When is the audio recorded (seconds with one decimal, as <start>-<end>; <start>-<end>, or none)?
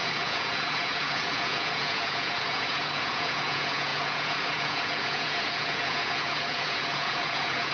none